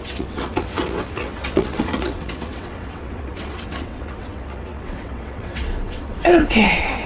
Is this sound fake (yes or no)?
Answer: yes